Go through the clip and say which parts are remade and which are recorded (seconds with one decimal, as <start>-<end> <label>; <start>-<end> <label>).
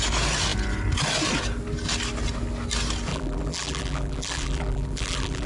0.0-3.1 recorded; 3.1-5.5 remade